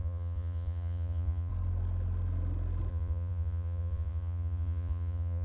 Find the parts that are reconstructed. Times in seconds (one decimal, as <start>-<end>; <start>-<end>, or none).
0.0-1.5; 2.9-5.4